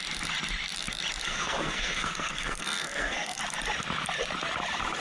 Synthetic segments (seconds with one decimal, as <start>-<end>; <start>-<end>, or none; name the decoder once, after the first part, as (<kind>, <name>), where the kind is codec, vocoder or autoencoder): 1.2-3.4 (codec, SNAC)